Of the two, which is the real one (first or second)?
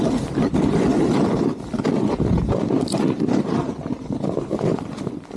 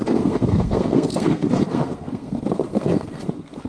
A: first